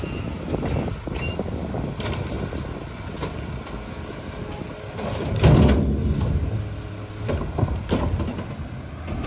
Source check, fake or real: real